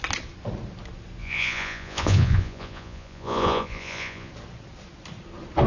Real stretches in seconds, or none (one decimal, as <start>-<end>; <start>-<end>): 0.0-1.2; 4.3-5.7